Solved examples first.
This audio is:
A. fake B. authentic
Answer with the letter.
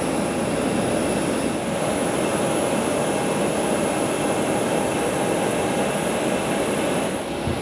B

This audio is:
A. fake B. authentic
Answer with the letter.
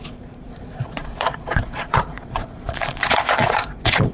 A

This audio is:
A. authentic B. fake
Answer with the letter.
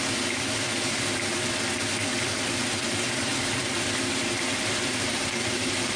A